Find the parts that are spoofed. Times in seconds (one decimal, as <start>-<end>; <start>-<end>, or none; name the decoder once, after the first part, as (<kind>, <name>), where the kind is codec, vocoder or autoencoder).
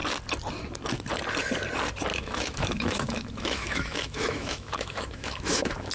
2.1-5.9 (autoencoder, DAC-VAE)